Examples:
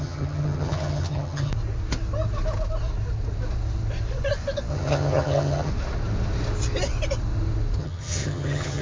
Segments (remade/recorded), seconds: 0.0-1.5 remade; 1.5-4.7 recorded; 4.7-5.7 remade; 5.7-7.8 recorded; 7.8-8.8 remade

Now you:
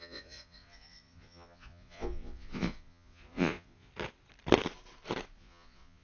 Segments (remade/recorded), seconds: 0.0-3.9 remade; 3.9-5.4 recorded; 5.4-6.0 remade

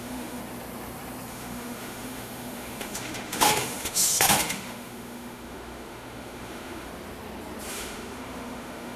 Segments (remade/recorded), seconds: 0.0-0.4 remade; 0.4-1.3 recorded; 1.3-6.9 remade; 6.9-7.7 recorded; 7.7-9.0 remade

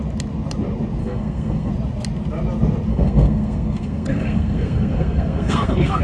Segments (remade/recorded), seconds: 0.0-1.0 recorded; 1.0-1.7 remade; 1.7-2.9 recorded; 2.9-6.0 remade